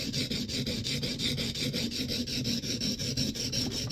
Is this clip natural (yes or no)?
yes